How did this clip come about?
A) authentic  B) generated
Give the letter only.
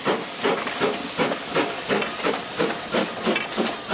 A